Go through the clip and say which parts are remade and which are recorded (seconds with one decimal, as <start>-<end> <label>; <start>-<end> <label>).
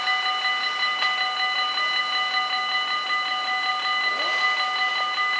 0.0-5.4 recorded